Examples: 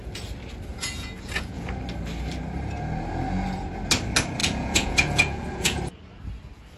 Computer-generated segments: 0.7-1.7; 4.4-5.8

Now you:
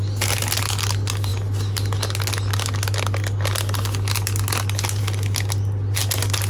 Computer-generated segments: none

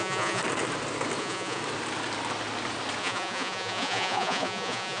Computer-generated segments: 0.0-0.4; 1.2-1.6; 3.0-5.0

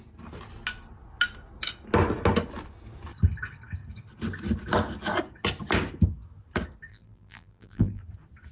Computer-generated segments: 6.9-8.0